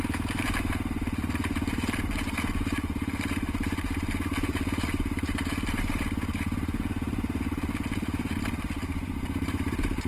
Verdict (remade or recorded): remade